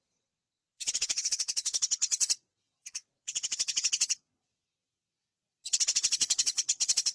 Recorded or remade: remade